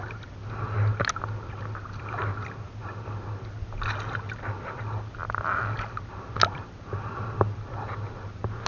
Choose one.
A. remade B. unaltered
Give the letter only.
B